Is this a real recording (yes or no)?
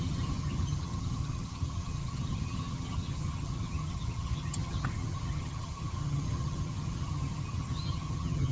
no